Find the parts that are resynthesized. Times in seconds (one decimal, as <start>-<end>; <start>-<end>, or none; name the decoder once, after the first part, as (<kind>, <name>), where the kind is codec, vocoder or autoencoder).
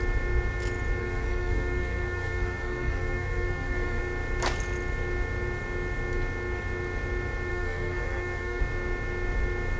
1.0-4.0 (codec, SNAC); 7.5-8.6